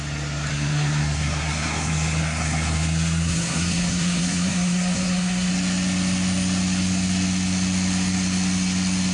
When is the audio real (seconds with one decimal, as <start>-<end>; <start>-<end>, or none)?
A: 0.0-0.5; 5.5-9.1